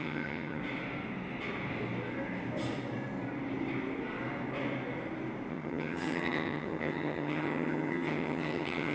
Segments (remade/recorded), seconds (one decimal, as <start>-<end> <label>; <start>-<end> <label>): 0.0-0.6 remade; 0.6-5.5 recorded; 5.5-8.9 remade